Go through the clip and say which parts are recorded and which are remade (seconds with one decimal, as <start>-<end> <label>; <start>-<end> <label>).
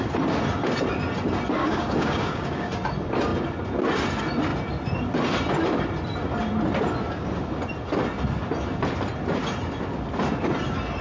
0.0-1.6 recorded; 1.6-2.7 remade; 2.7-11.0 recorded